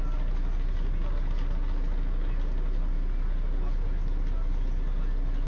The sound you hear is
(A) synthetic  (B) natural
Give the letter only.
B